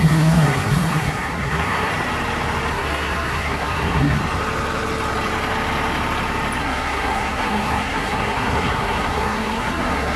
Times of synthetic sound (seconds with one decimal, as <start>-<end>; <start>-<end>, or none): 0.0-1.9; 2.7-4.2; 6.6-10.2